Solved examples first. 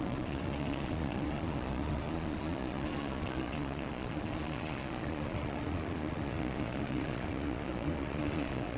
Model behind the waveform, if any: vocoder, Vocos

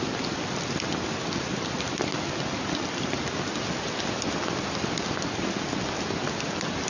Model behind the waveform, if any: none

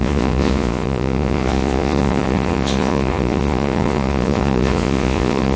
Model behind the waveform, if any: vocoder, Vocos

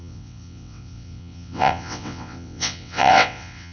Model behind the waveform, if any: vocoder, WaveNeXt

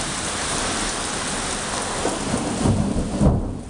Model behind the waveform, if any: none